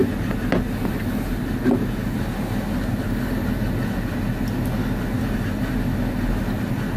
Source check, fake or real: real